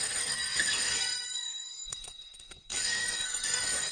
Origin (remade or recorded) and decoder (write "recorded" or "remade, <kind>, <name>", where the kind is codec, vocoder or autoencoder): remade, codec, SNAC